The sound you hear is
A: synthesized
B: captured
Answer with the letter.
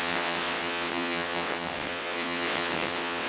A